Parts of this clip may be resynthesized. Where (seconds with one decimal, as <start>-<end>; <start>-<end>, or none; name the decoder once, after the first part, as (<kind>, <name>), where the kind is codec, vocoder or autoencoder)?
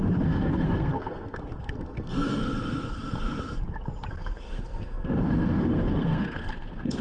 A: 0.0-2.4 (codec, SNAC); 4.1-7.0